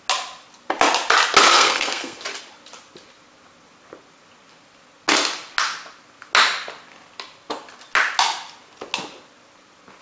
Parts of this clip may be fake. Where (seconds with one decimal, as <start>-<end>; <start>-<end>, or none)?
1.5-2.2